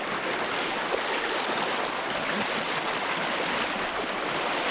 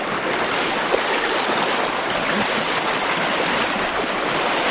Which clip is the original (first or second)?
first